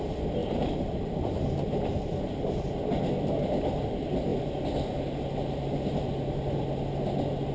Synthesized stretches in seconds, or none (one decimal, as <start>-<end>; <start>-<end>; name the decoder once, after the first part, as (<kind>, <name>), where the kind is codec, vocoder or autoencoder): 0.4-2.7 (vocoder, BigVGAN v2)